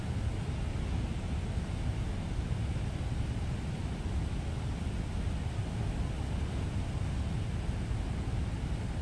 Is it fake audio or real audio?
real